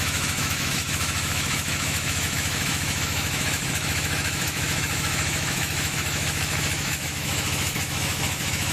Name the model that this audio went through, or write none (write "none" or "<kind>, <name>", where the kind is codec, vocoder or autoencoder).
autoencoder, DAC-VAE